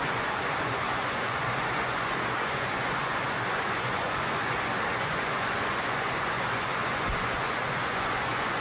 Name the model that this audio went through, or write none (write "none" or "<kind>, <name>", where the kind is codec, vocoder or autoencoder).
vocoder, Vocos